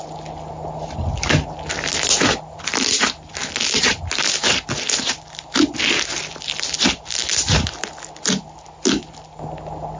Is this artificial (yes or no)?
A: no